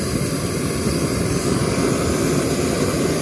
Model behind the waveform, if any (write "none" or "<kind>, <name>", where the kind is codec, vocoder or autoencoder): none